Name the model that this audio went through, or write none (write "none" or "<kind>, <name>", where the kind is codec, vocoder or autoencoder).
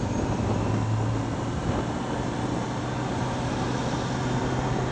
none